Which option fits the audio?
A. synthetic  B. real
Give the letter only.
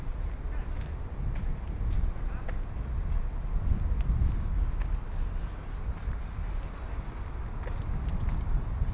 B